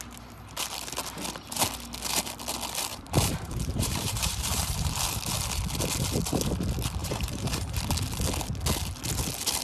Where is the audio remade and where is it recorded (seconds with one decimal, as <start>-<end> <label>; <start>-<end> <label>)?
0.0-2.9 recorded; 2.9-5.0 remade; 5.0-7.0 recorded; 7.0-7.8 remade; 7.8-9.6 recorded